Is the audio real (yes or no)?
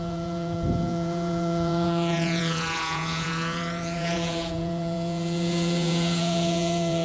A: no